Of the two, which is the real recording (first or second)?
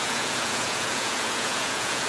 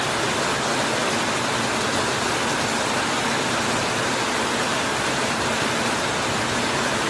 second